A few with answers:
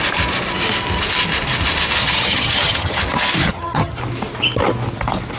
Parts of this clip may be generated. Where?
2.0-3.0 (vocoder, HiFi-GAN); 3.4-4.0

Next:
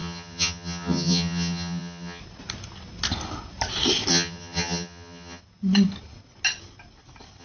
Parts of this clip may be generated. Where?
0.0-2.2 (vocoder, HiFi-GAN); 4.1-5.4

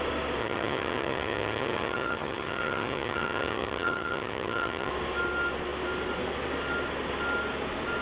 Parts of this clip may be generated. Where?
0.4-4.9 (vocoder, HiFi-GAN)

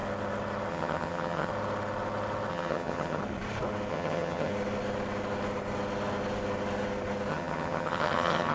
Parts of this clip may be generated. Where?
0.7-1.5 (vocoder, HiFi-GAN); 2.5-3.2; 3.9-4.5; 7.3-8.5